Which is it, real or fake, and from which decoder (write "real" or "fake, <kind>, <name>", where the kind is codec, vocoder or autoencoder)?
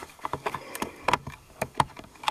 fake, codec, DAC